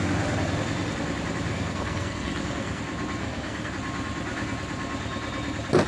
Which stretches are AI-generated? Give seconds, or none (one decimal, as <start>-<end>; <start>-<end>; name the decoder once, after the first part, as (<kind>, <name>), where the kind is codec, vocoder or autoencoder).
1.5-2.8 (codec, SNAC); 3.2-3.7